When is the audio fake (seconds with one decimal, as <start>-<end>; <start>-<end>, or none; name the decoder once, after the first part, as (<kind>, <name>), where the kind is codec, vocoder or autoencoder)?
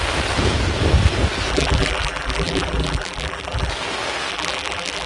1.5-3.7 (vocoder, BigVGAN v2); 4.3-5.1